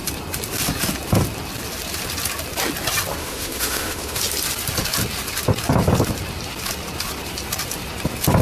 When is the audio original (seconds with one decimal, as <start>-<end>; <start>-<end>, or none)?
0.0-3.2; 4.2-8.4